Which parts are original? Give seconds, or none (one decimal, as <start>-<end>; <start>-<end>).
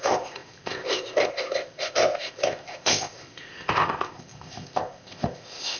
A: none